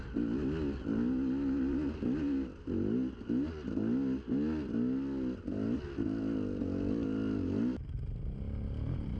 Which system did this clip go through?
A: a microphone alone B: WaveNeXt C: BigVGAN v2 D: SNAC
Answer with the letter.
A